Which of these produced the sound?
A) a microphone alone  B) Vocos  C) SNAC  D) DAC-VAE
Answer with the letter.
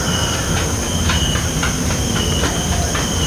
A